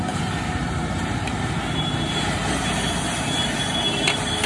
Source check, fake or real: real